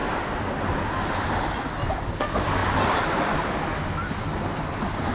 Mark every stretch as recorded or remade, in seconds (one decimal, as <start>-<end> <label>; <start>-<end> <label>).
0.0-5.1 recorded

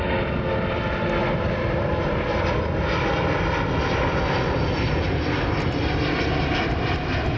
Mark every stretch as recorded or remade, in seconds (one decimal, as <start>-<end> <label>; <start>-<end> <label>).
0.0-1.2 recorded; 1.2-2.5 remade; 2.5-7.4 recorded

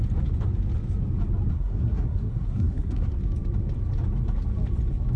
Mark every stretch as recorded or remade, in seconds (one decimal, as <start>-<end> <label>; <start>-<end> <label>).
0.0-1.5 recorded; 1.5-3.1 remade; 3.1-5.2 recorded

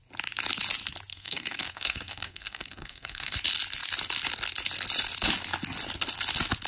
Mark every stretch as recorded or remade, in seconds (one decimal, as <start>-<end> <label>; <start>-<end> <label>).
0.0-1.1 recorded; 1.1-3.4 remade; 3.4-6.7 recorded

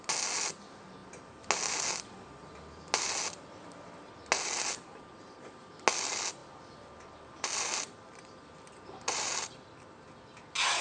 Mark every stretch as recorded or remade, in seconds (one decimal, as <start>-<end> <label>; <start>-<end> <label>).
0.0-10.8 recorded

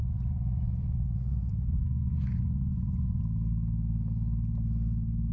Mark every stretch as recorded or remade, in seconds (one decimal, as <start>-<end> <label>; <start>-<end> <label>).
0.0-3.2 remade; 3.2-5.3 recorded

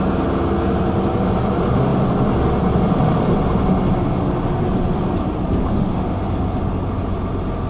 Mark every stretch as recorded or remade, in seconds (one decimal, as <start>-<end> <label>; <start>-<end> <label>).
0.0-5.7 recorded; 5.7-6.2 remade; 6.2-7.7 recorded

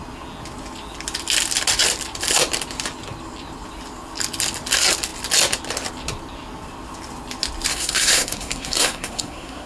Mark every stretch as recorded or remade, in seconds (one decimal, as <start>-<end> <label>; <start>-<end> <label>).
0.0-7.7 recorded; 7.7-9.7 remade